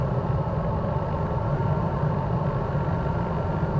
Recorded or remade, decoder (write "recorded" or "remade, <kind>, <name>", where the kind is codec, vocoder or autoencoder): recorded